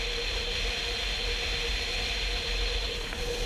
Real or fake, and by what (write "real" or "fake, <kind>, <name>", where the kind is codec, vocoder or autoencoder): real